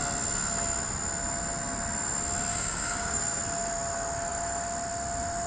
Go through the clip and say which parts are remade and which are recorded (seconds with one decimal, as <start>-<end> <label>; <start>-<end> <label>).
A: 0.0-2.5 recorded; 2.5-3.4 remade; 3.4-5.5 recorded